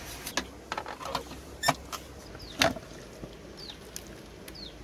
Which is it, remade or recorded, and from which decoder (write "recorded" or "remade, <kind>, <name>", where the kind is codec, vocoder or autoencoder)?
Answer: recorded